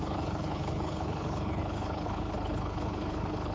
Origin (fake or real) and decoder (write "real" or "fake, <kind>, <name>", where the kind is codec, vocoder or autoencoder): fake, codec, HILCodec